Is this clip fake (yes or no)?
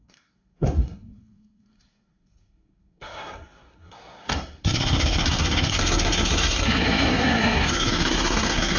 yes